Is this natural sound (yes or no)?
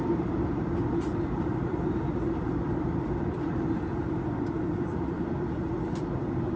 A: no